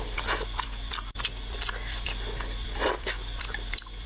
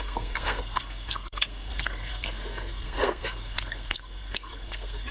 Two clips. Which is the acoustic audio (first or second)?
first